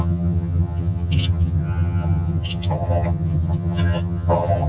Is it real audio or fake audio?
fake